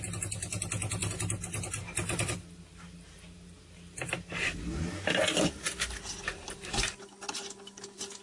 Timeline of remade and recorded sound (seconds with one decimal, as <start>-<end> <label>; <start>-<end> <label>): 0.0-8.2 recorded